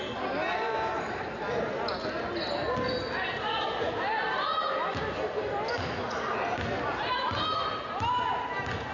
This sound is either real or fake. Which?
real